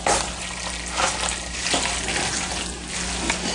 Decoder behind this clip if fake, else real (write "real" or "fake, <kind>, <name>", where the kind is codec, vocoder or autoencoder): real